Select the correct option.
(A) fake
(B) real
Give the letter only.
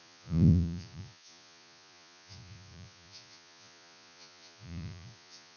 A